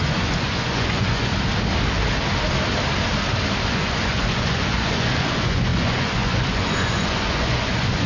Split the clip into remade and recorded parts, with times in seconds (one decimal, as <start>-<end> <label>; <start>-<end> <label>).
0.0-1.3 remade; 1.3-3.7 recorded; 3.7-8.1 remade